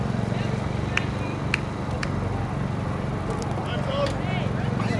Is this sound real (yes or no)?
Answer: yes